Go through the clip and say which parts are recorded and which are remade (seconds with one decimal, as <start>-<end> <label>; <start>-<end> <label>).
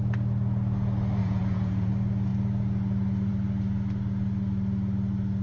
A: 0.0-1.2 recorded; 1.2-1.9 remade; 1.9-5.4 recorded